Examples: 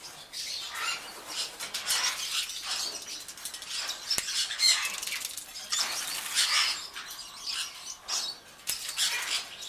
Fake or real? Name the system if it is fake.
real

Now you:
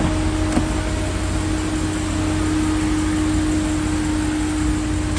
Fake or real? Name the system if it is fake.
real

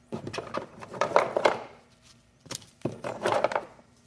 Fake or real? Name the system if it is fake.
fake, vocoder, BigVGAN v2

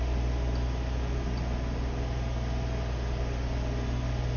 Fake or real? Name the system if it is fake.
real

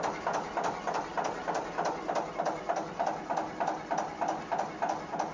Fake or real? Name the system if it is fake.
real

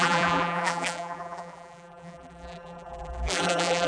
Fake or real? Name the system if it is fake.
fake, vocoder, BigVGAN v2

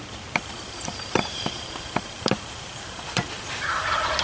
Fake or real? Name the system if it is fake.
fake, vocoder, BigVGAN v2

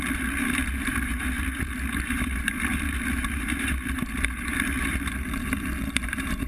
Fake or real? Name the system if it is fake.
fake, vocoder, BigVGAN v2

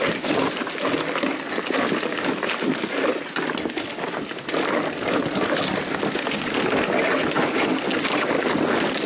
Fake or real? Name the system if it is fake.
real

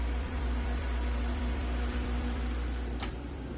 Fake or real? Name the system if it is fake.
fake, vocoder, BigVGAN v2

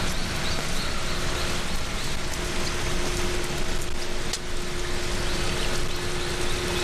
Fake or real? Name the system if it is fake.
real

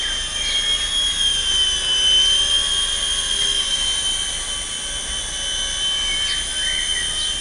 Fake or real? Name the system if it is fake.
real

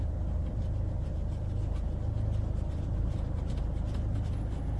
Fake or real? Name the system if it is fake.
real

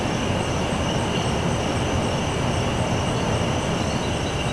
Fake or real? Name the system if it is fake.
real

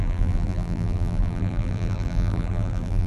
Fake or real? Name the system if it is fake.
fake, vocoder, BigVGAN v2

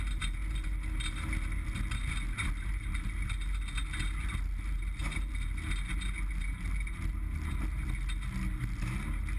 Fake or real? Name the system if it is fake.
real